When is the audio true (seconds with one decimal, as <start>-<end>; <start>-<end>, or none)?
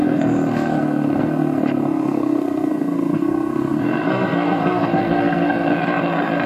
none